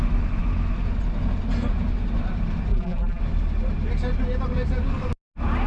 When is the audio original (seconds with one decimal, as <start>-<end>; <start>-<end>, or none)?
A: 0.0-2.7; 3.2-5.7